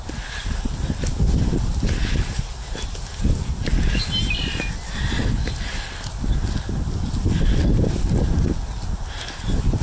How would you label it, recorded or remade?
recorded